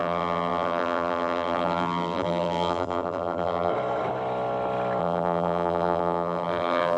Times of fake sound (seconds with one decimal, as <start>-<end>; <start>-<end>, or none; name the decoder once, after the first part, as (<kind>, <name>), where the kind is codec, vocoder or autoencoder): 0.0-3.7 (vocoder, BigVGAN v2); 5.0-7.0